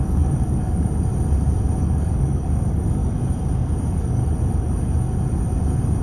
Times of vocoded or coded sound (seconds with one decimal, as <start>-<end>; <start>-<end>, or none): 0.0-1.1; 1.8-3.0; 3.8-4.2

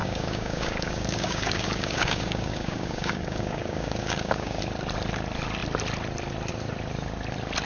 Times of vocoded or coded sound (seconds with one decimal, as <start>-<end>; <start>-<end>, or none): 0.0-4.6

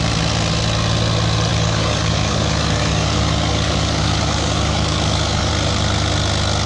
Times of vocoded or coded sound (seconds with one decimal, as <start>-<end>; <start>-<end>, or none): 1.5-5.5

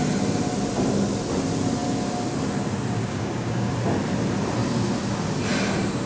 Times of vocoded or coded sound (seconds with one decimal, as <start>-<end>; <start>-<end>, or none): 3.0-3.7